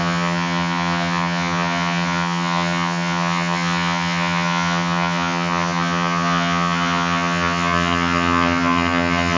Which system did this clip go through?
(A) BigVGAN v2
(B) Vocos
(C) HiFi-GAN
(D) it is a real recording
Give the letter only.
C